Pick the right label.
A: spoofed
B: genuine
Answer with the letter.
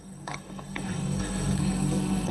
A